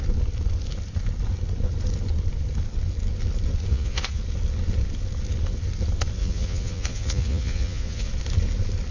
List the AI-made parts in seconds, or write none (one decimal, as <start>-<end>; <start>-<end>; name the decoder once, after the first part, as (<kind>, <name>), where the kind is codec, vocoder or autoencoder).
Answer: 3.7-4.2 (vocoder, Vocos); 6.2-8.1